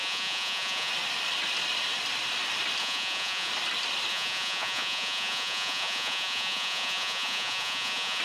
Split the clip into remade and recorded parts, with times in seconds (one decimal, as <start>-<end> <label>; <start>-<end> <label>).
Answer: 0.0-0.9 remade; 0.9-2.8 recorded; 2.8-3.5 remade; 3.5-4.1 recorded; 4.1-8.2 remade